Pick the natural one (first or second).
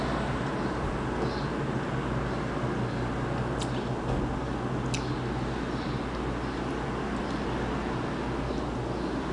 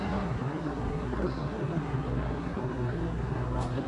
first